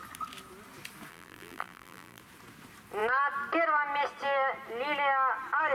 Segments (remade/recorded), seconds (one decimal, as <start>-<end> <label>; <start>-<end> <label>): 0.0-1.1 recorded; 1.1-2.2 remade; 2.2-5.7 recorded